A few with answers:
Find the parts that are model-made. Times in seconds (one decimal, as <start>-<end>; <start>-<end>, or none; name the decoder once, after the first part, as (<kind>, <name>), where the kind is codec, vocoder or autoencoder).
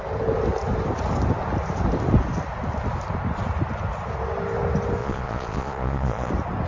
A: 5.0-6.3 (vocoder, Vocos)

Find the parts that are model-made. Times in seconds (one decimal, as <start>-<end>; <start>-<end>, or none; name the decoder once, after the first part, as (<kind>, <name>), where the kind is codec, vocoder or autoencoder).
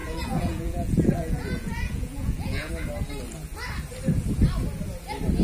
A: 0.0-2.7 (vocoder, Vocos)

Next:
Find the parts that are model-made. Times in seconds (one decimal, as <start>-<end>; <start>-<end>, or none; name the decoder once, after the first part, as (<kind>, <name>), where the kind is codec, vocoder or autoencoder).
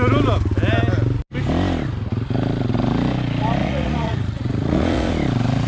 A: 3.6-5.1 (vocoder, Vocos)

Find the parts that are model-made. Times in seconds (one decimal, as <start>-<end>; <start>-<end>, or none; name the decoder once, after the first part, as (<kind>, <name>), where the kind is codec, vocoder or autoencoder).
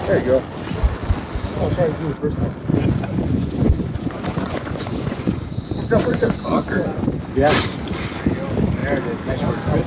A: 2.7-7.0 (vocoder, Vocos)